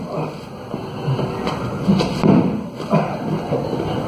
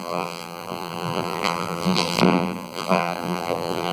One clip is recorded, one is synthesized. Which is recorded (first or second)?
first